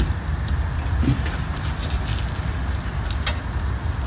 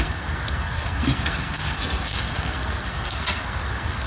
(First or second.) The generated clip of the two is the second